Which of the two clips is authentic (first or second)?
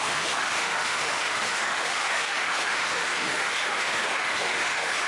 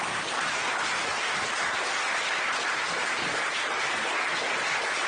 second